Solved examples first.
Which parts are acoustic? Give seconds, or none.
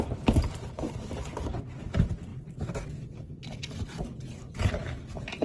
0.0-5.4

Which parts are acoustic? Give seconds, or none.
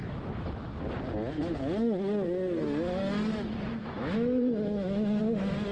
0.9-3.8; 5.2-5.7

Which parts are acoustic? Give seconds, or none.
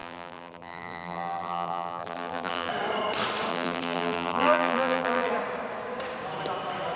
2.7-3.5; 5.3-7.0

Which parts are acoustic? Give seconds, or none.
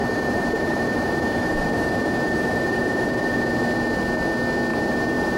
3.2-4.7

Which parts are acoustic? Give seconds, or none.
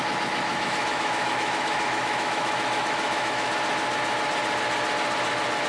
0.0-0.5; 3.5-5.7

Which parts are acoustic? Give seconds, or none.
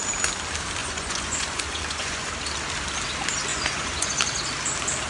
0.0-0.8; 2.3-3.5; 4.1-5.1